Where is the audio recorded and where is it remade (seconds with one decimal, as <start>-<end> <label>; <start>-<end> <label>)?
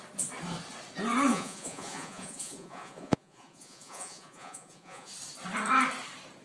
0.0-1.3 recorded; 1.3-5.1 remade; 5.1-6.4 recorded